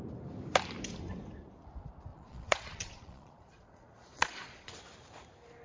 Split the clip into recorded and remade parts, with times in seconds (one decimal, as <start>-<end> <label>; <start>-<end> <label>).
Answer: 0.0-2.1 recorded; 2.1-4.7 remade; 4.7-5.6 recorded